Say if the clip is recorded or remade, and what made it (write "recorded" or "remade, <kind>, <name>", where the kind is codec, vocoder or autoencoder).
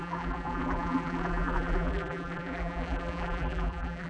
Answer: remade, vocoder, BigVGAN v2